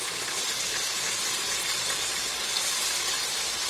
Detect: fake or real real